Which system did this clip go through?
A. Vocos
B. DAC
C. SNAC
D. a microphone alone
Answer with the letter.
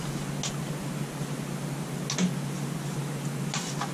D